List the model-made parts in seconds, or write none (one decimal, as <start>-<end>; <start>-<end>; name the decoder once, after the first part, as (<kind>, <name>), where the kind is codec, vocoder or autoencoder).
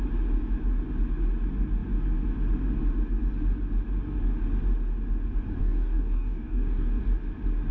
5.6-7.0 (codec, DAC)